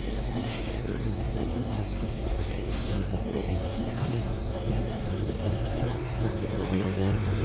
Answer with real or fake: fake